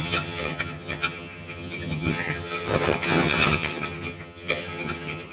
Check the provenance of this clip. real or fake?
fake